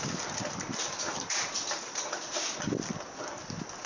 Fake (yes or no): no